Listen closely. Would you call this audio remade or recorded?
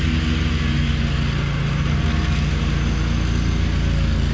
recorded